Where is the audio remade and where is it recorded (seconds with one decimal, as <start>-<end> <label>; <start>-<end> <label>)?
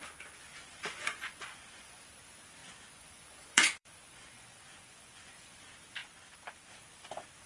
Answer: 0.0-0.6 recorded; 0.6-2.1 remade; 2.1-2.6 recorded; 2.6-5.6 remade; 5.6-7.5 recorded